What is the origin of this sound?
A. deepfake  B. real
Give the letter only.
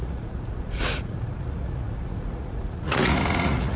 A